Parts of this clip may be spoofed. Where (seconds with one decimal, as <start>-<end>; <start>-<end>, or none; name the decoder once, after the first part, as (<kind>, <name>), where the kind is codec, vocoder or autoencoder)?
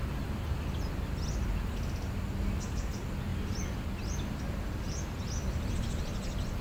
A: none